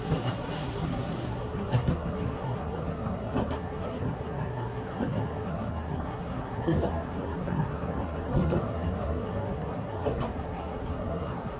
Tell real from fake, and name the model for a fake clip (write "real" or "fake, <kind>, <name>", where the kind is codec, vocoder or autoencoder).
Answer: fake, codec, SNAC